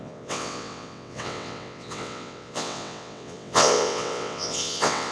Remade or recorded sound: remade